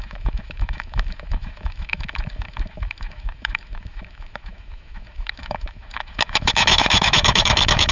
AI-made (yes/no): yes